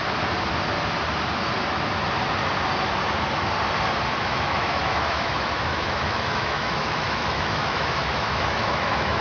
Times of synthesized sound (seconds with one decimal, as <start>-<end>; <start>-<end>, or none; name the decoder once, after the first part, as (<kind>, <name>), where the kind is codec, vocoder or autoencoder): 4.2-9.2 (autoencoder, DAC-VAE)